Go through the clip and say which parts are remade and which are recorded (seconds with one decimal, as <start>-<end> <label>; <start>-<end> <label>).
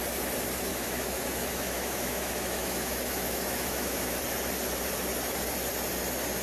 0.0-0.7 recorded; 0.7-4.2 remade; 4.2-6.4 recorded